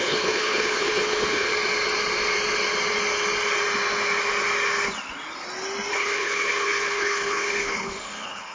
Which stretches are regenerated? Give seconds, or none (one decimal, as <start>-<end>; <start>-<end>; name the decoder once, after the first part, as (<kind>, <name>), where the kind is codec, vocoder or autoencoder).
0.0-1.5 (codec, HILCodec); 5.9-8.5